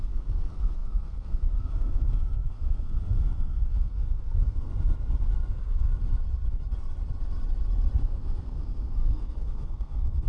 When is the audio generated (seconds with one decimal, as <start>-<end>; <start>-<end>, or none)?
0.0-4.7; 5.5-5.9; 8.0-10.3